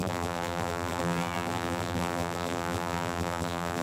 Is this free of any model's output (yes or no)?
no